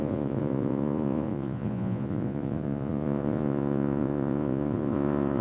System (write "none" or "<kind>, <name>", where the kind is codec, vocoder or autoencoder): vocoder, Vocos